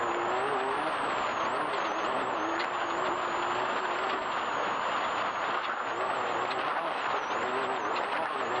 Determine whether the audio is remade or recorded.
recorded